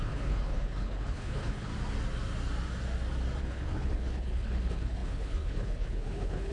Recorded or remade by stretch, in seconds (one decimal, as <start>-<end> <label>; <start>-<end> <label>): 0.0-1.7 remade; 1.7-3.4 recorded; 3.4-6.5 remade